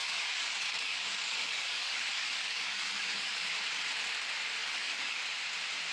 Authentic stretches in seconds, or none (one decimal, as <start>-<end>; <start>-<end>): 3.5-4.6; 5.2-5.9